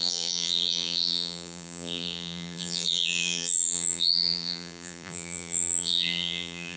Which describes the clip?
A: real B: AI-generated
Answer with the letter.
B